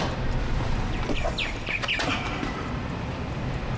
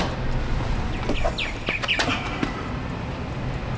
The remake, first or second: first